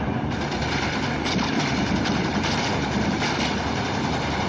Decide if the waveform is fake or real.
fake